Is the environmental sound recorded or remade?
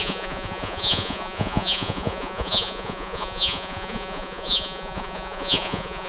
remade